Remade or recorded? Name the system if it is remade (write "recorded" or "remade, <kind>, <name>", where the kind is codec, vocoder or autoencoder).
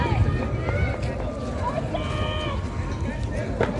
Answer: recorded